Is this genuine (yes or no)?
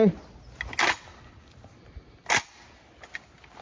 yes